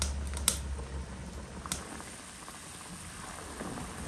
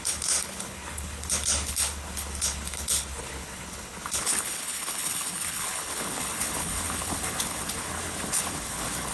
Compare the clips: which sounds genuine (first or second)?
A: first